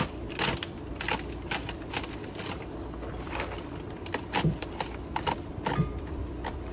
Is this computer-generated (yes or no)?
yes